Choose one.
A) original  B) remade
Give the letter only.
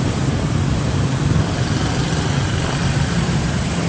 A